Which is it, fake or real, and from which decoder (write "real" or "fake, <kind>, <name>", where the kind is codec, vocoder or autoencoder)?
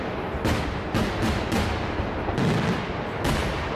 real